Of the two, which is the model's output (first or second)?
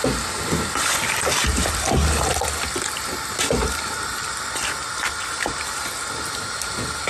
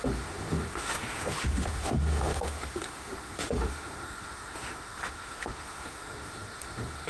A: second